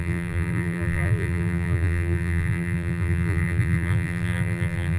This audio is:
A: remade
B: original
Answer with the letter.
A